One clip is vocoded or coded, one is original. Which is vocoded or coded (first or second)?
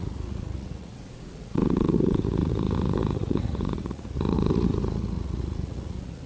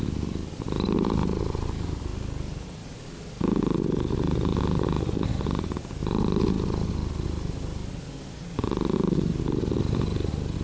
first